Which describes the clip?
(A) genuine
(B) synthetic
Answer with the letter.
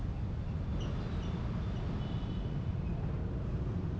A